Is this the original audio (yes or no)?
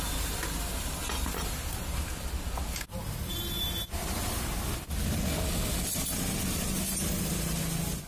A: yes